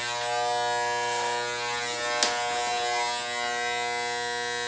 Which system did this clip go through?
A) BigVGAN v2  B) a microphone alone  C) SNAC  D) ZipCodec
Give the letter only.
B